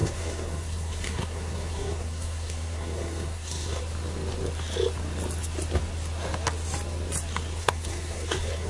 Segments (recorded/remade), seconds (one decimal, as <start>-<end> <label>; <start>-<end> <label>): 0.0-3.8 remade; 3.8-7.6 recorded; 7.6-8.7 remade